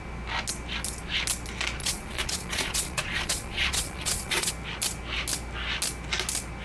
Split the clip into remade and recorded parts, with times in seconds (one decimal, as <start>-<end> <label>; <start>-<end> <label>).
0.0-1.8 recorded; 1.8-4.5 remade; 4.5-6.6 recorded